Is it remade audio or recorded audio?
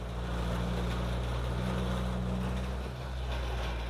recorded